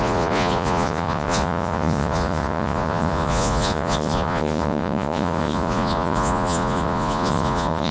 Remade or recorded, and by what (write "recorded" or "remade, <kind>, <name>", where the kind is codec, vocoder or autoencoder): remade, vocoder, Vocos